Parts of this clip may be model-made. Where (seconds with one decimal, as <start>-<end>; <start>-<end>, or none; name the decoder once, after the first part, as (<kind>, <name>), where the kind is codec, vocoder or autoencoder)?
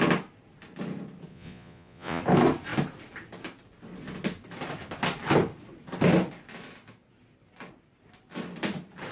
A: 1.3-2.2 (vocoder, Vocos)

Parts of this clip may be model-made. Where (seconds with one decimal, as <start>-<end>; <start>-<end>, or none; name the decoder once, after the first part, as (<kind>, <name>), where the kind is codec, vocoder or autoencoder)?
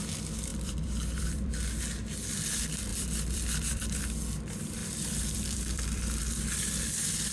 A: 0.5-1.5 (vocoder, BigVGAN v2); 2.9-4.0; 4.8-6.2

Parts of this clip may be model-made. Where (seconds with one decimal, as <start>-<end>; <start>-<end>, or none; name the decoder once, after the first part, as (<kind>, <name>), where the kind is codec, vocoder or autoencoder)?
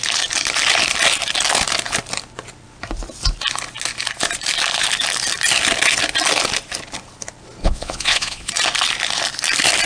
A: 7.6-8.5 (vocoder, Vocos)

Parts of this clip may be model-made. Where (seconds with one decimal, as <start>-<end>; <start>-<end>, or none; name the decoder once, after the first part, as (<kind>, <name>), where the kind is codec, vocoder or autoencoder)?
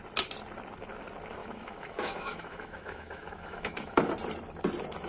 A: 1.4-4.1 (autoencoder, DAC-VAE)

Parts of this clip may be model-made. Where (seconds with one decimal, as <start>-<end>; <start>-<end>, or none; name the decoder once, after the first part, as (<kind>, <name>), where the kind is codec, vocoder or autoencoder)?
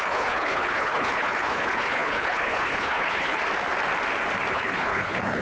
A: 0.0-3.4 (codec, HILCodec); 4.5-5.4